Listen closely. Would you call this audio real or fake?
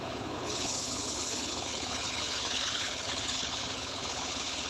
fake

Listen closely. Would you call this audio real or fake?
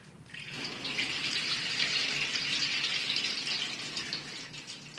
real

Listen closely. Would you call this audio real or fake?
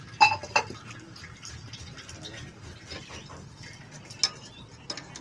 real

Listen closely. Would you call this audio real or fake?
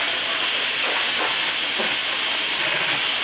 real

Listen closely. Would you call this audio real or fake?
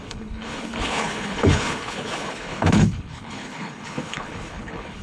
fake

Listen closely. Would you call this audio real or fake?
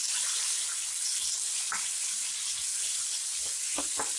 real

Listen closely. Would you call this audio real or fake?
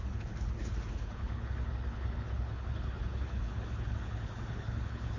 fake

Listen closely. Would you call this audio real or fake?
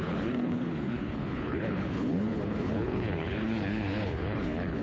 fake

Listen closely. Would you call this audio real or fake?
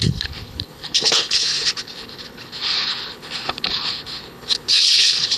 fake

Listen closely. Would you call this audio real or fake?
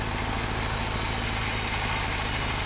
real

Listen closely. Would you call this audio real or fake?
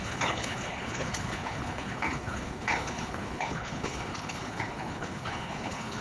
fake